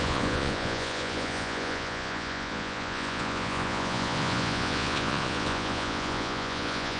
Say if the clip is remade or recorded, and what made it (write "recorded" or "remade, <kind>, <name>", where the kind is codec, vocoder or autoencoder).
remade, vocoder, Vocos